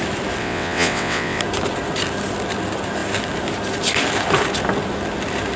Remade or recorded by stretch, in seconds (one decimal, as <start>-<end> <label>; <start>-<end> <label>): 0.0-0.4 recorded; 0.4-1.4 remade; 1.4-5.6 recorded